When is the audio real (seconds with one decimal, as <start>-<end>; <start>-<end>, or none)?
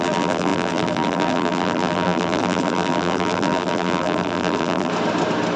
4.9-5.6